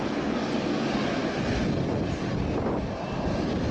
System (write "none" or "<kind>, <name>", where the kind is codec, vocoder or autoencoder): none